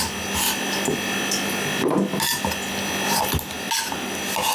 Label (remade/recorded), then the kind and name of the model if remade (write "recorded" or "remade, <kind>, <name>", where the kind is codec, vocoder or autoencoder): recorded